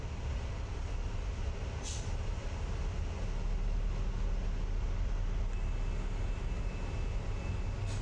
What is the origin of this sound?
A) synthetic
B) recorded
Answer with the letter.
B